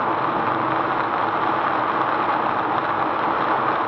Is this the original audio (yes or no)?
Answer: yes